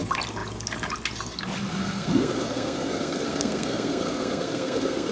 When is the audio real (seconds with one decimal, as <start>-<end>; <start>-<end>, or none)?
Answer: 0.0-1.8